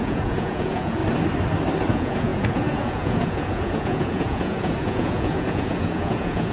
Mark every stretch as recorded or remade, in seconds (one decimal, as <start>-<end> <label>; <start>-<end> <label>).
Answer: 0.0-1.0 remade; 1.0-1.9 recorded; 1.9-6.5 remade